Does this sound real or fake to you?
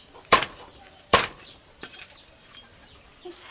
fake